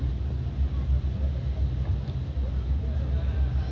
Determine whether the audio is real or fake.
real